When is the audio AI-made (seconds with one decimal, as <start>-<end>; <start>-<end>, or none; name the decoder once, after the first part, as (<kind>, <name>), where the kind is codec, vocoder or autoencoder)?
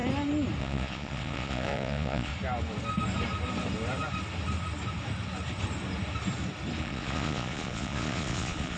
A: 0.6-2.3 (vocoder, Vocos); 6.8-8.8